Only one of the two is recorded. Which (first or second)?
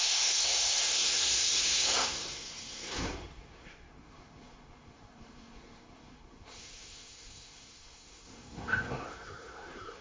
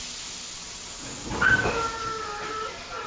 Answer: second